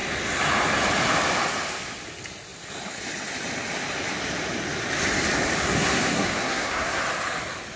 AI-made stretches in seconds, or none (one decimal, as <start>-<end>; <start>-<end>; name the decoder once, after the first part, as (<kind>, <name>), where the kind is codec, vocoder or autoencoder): 5.6-7.0 (codec, SNAC)